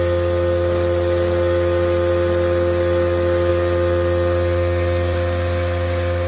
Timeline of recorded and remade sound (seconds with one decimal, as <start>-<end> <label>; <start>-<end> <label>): 0.0-6.3 recorded